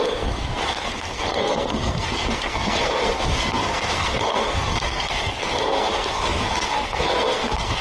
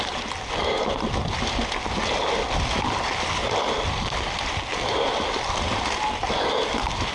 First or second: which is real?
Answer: second